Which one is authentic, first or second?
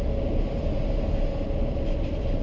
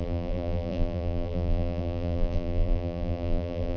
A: first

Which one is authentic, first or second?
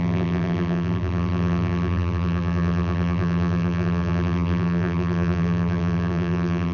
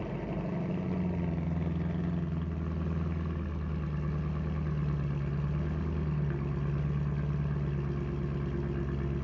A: second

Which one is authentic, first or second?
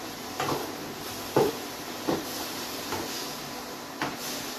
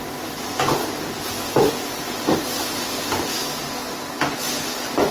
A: second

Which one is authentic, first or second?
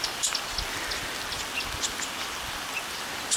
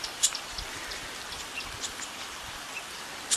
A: first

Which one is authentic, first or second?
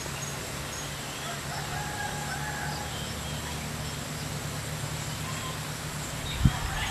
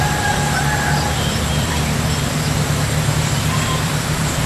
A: first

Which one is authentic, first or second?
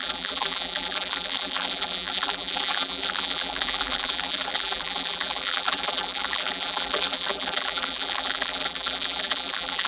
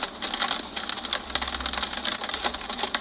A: second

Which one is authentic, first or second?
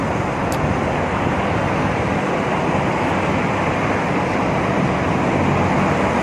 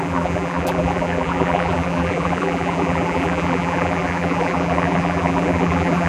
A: first